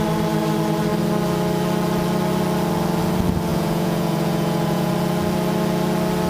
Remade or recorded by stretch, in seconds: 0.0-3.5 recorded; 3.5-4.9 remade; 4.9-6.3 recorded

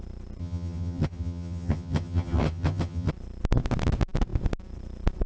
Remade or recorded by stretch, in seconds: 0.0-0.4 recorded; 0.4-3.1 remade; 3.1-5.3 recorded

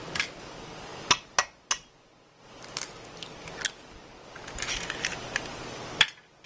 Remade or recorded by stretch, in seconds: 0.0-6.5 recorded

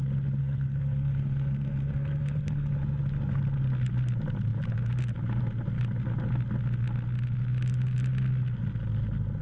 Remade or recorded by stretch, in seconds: 0.0-0.4 recorded; 0.4-2.7 remade; 2.7-9.4 recorded

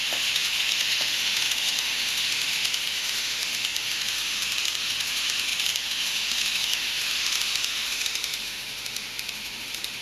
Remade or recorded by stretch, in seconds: 0.0-10.0 remade

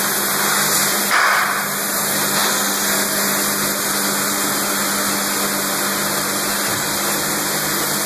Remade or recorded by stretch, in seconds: 0.0-8.1 recorded

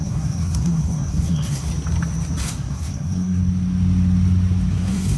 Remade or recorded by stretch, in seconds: 0.0-1.7 remade; 1.7-2.4 recorded; 2.4-3.4 remade; 3.4-4.7 recorded; 4.7-5.2 remade